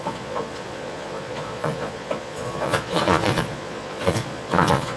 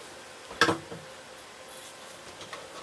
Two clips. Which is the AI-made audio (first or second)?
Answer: first